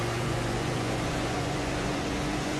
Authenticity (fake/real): fake